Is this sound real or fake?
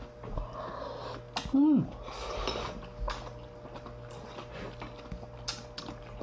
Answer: real